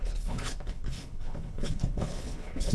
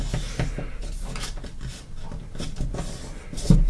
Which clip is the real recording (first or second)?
second